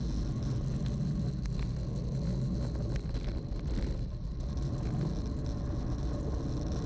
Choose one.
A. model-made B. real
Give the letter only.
B